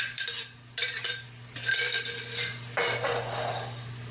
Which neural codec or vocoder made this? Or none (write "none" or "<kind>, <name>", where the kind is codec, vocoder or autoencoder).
none